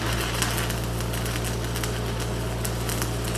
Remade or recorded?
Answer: recorded